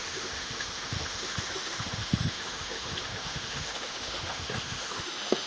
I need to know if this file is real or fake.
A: fake